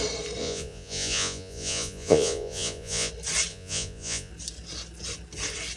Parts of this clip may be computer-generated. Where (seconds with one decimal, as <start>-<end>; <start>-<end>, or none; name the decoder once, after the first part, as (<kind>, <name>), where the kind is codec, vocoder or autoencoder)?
0.4-3.1 (vocoder, Vocos); 3.5-4.3